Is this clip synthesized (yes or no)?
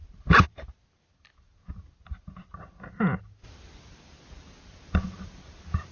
no